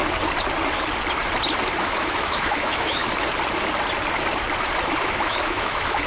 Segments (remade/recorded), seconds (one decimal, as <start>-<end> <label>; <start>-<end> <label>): 0.0-1.8 recorded; 1.8-3.0 remade; 3.0-5.0 recorded; 5.0-6.1 remade